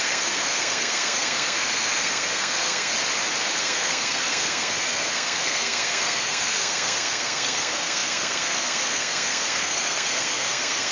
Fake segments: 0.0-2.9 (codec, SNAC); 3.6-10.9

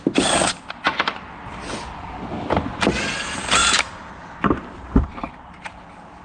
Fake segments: 3.6-6.2 (vocoder, BigVGAN v2)

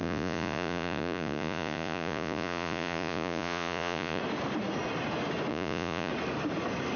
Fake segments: 0.0-4.2 (vocoder, Vocos); 5.5-6.1

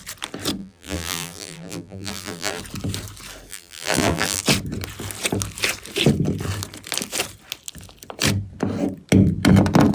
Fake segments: 0.6-2.6 (vocoder, BigVGAN v2); 3.5-4.4

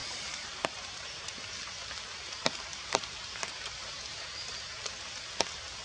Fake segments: 0.0-1.2 (vocoder, BigVGAN v2); 2.7-4.2